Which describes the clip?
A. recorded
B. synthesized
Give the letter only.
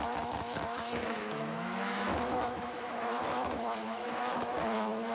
B